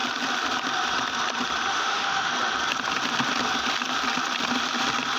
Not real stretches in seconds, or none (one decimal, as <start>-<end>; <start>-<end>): 1.7-2.3